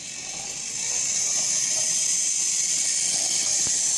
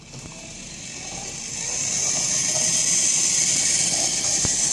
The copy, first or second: second